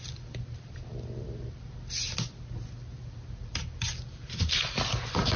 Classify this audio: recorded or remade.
remade